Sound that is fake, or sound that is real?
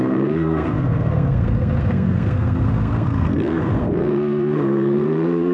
fake